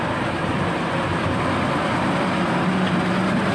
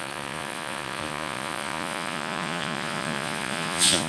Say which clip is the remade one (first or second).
second